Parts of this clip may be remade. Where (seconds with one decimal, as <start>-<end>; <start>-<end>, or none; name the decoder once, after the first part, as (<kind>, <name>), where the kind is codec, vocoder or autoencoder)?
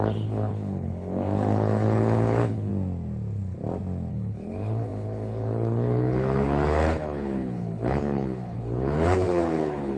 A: 0.0-2.7 (codec, HILCodec); 4.1-10.0